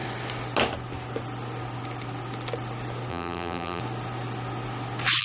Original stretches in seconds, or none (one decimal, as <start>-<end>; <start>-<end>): 0.0-3.1; 3.8-5.2